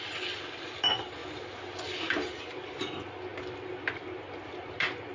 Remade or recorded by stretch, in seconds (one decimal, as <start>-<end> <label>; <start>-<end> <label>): 0.0-5.1 recorded

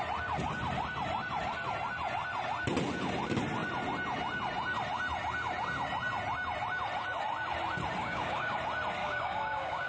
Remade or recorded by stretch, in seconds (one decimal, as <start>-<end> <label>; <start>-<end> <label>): 0.0-8.0 recorded; 8.0-8.6 remade; 8.6-9.0 recorded; 9.0-9.9 remade